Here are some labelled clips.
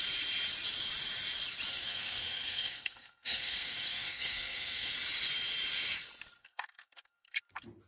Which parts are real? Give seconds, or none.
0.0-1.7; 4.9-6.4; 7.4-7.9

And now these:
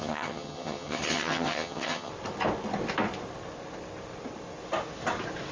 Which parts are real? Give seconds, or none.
2.1-5.5

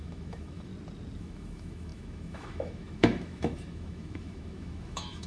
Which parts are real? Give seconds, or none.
0.7-1.2

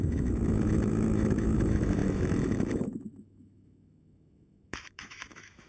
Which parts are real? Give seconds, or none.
none

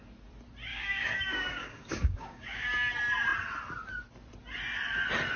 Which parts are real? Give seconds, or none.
0.0-0.7; 2.9-5.4

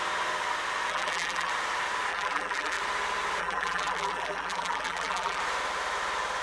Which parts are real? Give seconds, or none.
0.0-0.9; 1.5-2.1; 2.8-3.4; 5.4-6.4